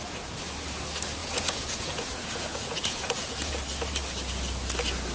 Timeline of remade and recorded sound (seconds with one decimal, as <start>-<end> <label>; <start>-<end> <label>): 0.0-1.2 recorded; 1.2-3.5 remade; 3.5-5.1 recorded